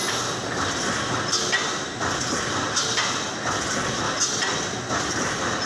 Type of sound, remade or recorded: recorded